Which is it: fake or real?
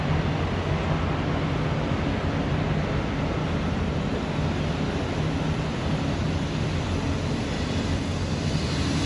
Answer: real